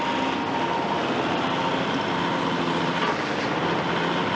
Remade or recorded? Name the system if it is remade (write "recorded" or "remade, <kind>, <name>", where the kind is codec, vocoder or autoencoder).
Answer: recorded